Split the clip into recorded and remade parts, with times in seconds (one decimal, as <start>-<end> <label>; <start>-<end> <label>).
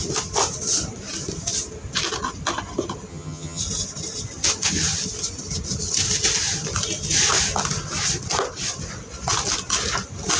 0.0-3.1 recorded; 3.1-3.6 remade; 3.6-10.4 recorded